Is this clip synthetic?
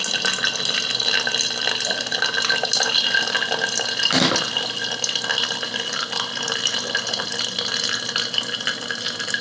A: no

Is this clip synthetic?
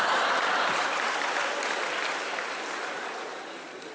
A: yes